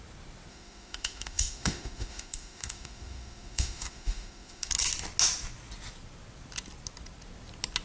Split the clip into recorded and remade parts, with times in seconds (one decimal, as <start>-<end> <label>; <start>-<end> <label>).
0.0-0.5 recorded; 0.5-4.7 remade; 4.7-7.8 recorded